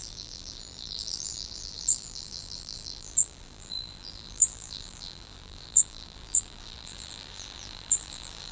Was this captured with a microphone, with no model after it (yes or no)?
no